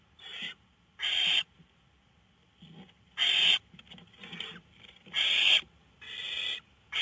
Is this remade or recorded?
recorded